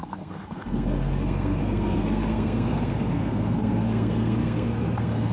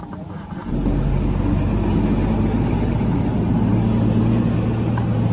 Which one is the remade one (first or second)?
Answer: first